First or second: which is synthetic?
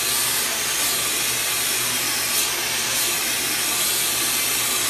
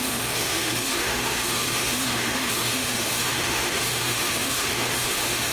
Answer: second